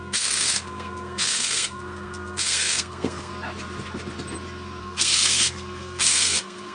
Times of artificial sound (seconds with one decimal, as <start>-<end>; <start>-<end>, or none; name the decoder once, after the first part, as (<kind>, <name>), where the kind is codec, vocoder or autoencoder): 0.0-3.3 (codec, SNAC); 4.8-6.7